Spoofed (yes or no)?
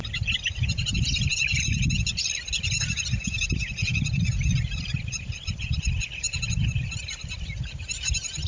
no